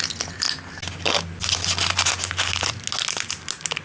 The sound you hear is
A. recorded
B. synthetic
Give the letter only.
A